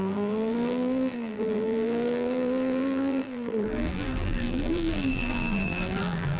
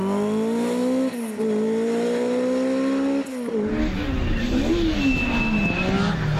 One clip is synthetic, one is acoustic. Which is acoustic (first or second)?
second